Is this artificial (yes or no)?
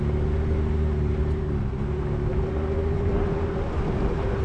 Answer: no